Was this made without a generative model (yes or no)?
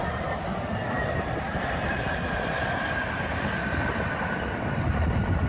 no